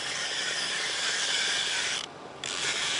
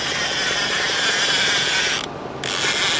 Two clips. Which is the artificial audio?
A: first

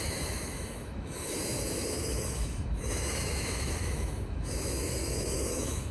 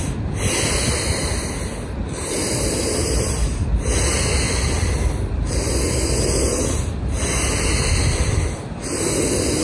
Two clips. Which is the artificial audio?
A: first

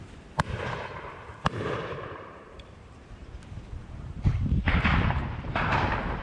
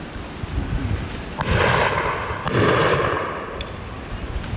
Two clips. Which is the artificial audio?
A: first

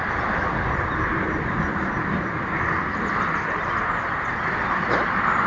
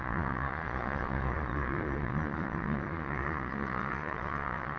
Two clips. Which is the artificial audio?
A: second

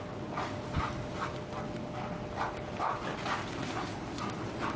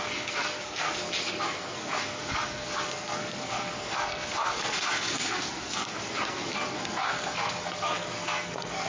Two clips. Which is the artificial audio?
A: second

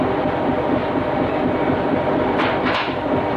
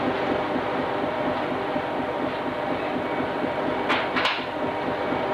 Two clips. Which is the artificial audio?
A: first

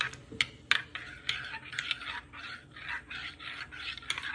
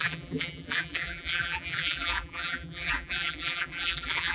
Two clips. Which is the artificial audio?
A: second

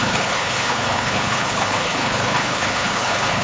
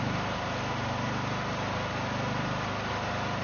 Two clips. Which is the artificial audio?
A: first